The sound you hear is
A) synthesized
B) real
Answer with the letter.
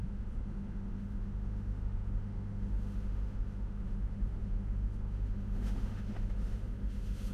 A